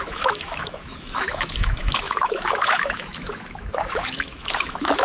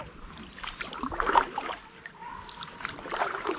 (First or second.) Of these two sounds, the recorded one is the second